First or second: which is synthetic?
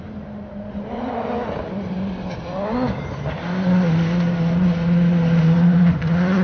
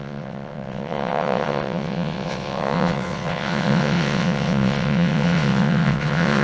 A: second